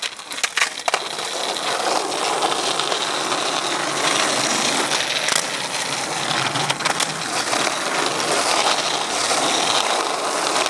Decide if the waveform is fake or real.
real